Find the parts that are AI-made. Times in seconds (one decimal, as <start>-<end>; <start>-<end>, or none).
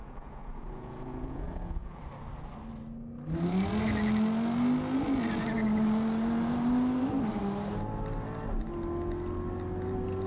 0.0-2.0